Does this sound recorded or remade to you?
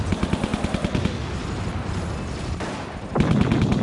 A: recorded